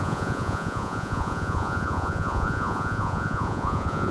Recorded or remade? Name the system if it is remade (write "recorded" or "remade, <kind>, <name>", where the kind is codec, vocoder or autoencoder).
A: remade, vocoder, Vocos